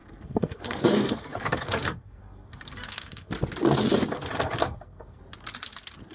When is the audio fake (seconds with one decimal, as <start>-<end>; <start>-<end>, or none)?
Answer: 0.0-3.3; 4.6-5.2